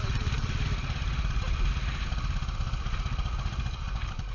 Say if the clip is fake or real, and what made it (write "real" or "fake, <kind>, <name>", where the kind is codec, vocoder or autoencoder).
real